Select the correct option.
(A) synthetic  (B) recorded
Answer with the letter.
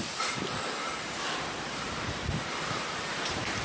A